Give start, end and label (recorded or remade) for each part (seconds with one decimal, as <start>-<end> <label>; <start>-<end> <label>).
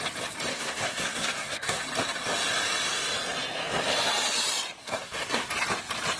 0.0-0.5 recorded; 0.5-1.8 remade; 1.8-4.8 recorded; 4.8-5.5 remade; 5.5-6.2 recorded